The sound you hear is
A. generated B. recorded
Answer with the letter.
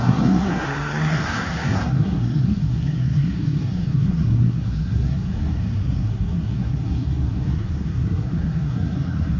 A